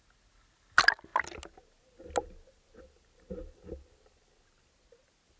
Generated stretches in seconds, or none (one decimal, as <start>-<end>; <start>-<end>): none